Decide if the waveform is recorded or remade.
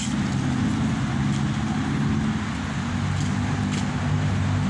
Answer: recorded